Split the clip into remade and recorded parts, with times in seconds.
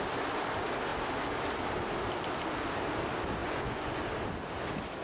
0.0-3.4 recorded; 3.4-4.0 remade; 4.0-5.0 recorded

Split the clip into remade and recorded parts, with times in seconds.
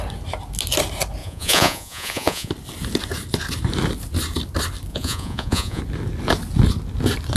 0.0-1.2 recorded; 1.2-2.5 remade; 2.5-4.9 recorded; 4.9-5.8 remade; 5.8-7.4 recorded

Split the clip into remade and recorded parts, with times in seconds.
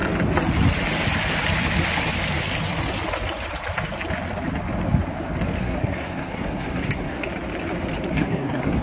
0.0-5.6 recorded; 5.6-7.3 remade; 7.3-8.1 recorded; 8.1-8.8 remade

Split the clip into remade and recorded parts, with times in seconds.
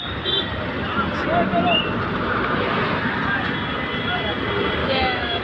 0.0-4.8 recorded; 4.8-5.4 remade